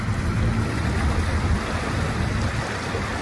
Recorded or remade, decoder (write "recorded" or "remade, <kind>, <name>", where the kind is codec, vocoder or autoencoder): recorded